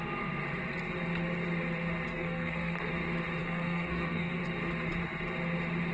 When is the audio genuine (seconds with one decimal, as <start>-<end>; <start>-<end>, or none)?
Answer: 0.0-2.1; 2.9-3.4; 4.4-5.9